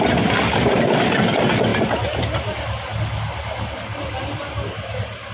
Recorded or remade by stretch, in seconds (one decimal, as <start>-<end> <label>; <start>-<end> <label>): 0.0-5.3 recorded